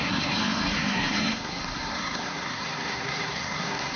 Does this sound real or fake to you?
fake